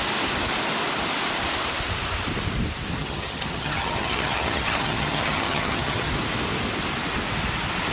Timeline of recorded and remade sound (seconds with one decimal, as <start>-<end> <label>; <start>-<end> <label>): 0.0-3.0 recorded; 3.0-6.1 remade; 6.1-7.9 recorded